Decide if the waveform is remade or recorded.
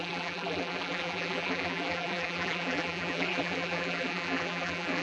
remade